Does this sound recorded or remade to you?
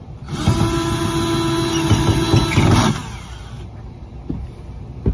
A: recorded